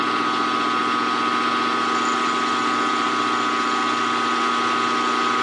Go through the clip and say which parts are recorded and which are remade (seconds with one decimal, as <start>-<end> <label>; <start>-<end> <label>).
0.0-5.4 recorded